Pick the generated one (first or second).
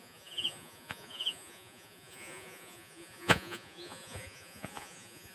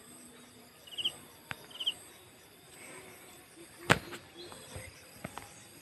first